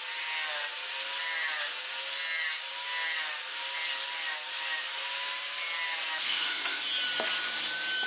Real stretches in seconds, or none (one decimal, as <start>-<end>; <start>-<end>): 0.0-6.2; 6.8-8.1